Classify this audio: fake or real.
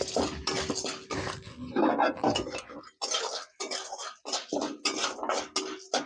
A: real